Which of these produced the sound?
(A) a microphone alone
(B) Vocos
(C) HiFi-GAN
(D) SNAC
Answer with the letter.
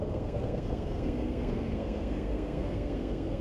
D